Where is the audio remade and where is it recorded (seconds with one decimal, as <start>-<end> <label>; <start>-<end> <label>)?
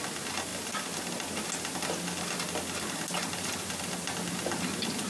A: 0.0-5.1 recorded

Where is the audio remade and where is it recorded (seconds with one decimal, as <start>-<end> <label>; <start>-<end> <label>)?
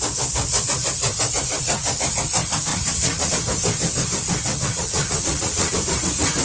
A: 0.0-2.7 recorded; 2.7-3.3 remade; 3.3-4.5 recorded; 4.5-5.7 remade; 5.7-6.4 recorded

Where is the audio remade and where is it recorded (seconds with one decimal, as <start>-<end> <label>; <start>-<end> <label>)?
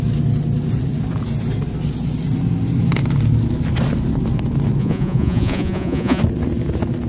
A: 0.0-4.8 recorded; 4.8-6.2 remade; 6.2-7.1 recorded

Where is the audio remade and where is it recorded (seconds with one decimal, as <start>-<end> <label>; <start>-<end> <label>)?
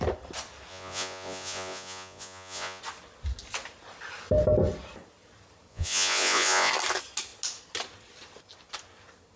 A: 0.0-0.7 recorded; 0.7-2.8 remade; 2.8-5.7 recorded; 5.7-6.7 remade; 6.7-9.4 recorded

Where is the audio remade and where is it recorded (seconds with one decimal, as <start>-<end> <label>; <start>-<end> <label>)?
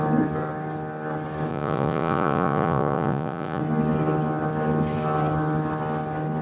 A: 0.0-1.5 recorded; 1.5-3.6 remade; 3.6-6.4 recorded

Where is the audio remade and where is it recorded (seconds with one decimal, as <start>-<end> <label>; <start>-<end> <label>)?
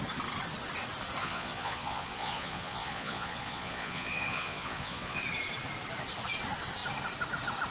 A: 0.0-1.2 recorded; 1.2-5.2 remade; 5.2-7.7 recorded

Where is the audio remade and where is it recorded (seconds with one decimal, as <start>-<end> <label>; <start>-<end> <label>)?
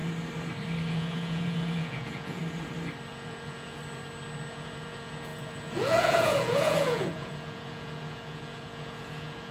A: 0.0-0.9 recorded; 0.9-2.4 remade; 2.4-3.1 recorded; 3.1-3.8 remade; 3.8-4.5 recorded; 4.5-9.5 remade